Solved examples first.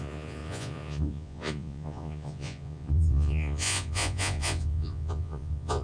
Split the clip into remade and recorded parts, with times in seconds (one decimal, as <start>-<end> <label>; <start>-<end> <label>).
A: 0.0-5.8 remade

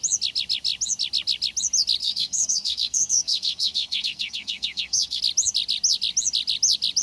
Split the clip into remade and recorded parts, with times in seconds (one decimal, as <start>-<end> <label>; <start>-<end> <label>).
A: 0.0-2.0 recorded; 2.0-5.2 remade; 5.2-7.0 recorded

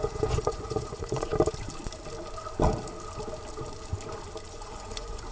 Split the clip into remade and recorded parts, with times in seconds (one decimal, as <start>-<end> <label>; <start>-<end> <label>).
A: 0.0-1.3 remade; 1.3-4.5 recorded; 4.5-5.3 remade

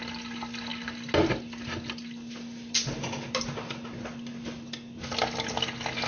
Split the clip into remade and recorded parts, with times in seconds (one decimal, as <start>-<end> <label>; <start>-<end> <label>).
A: 0.0-6.1 recorded

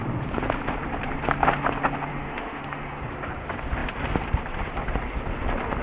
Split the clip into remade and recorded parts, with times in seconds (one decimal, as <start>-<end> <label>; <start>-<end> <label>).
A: 0.0-2.1 recorded; 2.1-2.6 remade; 2.6-5.8 recorded

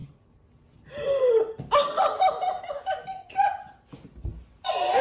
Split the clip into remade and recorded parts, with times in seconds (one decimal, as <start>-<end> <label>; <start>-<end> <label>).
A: 0.0-5.0 recorded